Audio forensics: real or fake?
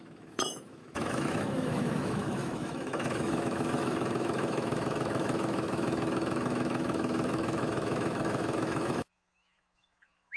fake